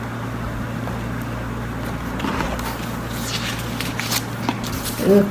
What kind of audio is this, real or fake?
real